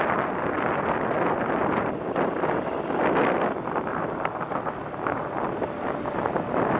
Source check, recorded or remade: recorded